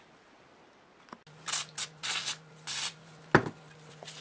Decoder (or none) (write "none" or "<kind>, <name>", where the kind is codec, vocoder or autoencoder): none